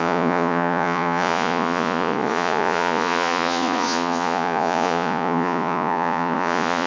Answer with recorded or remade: remade